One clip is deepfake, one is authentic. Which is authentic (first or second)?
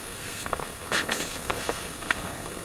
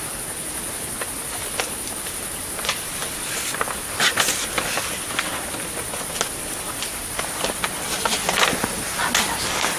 second